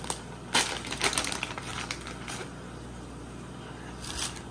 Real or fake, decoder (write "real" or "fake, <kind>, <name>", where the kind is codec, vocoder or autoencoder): real